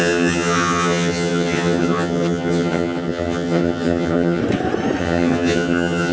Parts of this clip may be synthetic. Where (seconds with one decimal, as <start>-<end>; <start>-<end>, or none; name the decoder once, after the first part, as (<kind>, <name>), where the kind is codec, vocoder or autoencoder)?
0.0-4.4 (vocoder, HiFi-GAN); 5.0-6.1